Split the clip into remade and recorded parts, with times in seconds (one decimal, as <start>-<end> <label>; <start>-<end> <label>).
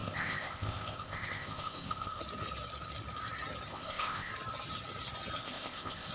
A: 0.0-2.2 remade; 2.2-3.7 recorded; 3.7-4.3 remade; 4.3-5.4 recorded; 5.4-6.1 remade